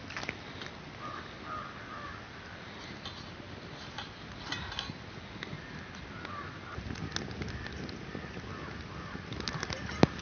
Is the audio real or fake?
real